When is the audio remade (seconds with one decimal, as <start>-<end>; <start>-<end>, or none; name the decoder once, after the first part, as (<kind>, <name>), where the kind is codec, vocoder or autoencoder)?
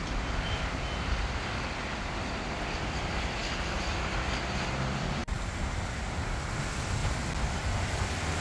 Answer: 7.0-7.8 (vocoder, BigVGAN v2)